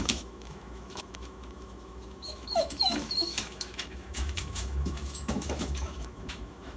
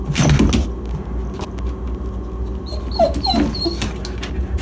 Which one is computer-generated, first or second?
first